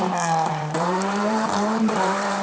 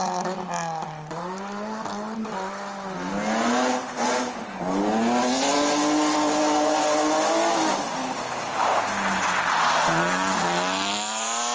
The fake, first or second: first